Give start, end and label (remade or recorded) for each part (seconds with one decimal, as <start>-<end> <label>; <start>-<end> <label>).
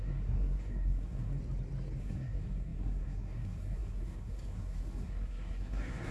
0.0-1.4 remade; 1.4-2.0 recorded; 2.0-6.1 remade